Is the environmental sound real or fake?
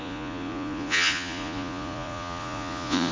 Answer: fake